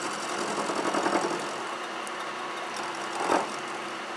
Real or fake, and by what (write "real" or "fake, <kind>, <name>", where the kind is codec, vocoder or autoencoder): real